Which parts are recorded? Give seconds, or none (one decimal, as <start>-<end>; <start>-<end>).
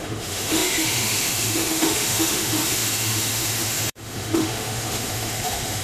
none